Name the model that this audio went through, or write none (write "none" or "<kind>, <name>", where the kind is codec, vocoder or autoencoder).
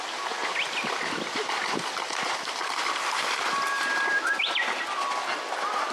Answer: none